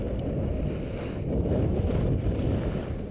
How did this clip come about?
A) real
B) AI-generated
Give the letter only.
A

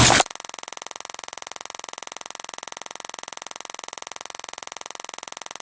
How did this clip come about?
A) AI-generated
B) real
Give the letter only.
B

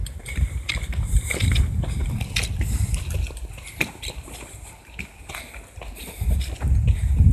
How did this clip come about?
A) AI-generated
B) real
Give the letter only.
B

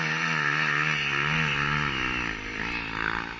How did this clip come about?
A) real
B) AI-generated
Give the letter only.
A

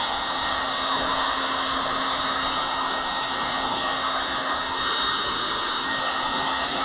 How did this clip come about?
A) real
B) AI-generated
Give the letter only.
A